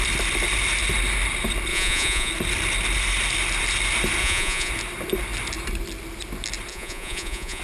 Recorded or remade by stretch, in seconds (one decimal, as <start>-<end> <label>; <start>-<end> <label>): 0.0-1.7 recorded; 1.7-2.3 remade; 2.3-4.2 recorded; 4.2-4.7 remade; 4.7-6.7 recorded; 6.7-7.6 remade